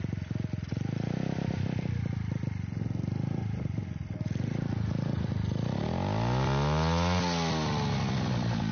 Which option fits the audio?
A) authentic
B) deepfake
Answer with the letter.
A